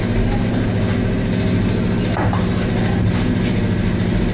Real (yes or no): yes